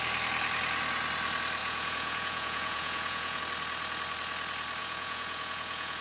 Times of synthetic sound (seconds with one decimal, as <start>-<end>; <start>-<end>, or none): 1.6-3.4; 4.8-6.0